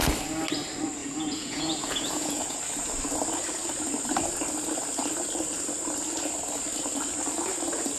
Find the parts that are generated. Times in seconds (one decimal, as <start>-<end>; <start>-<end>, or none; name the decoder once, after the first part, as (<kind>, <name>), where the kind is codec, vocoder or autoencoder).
1.0-2.6 (vocoder, Vocos)